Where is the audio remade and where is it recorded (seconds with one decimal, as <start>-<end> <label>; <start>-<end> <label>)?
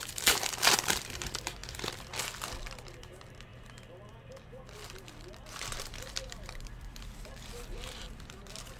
0.0-8.8 remade